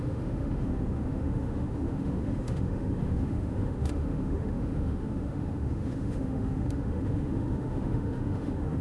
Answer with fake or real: fake